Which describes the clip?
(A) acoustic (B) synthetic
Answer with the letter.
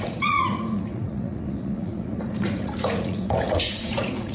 B